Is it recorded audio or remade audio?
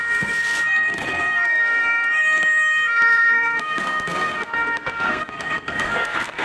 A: remade